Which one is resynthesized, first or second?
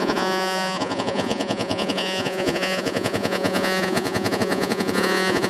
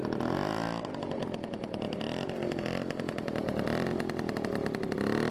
first